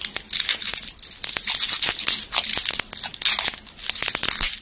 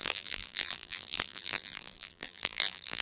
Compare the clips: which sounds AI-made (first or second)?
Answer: second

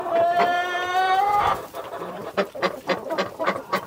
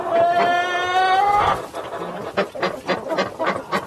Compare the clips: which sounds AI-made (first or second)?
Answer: first